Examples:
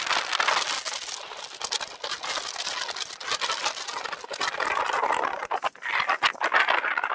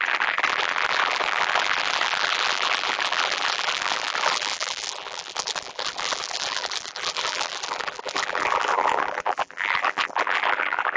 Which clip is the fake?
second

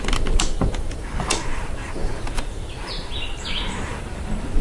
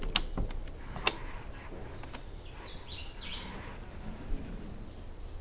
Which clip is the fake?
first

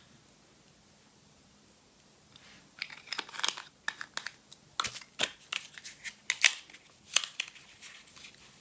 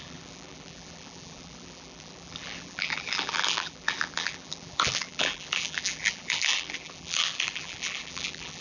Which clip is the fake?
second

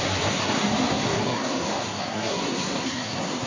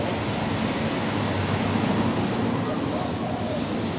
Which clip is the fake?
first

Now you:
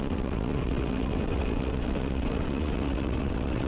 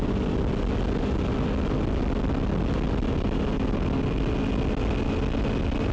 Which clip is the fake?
first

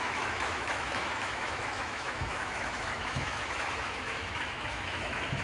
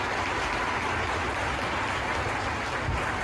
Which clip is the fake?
first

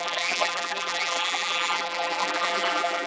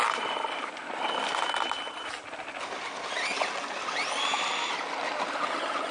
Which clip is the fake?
first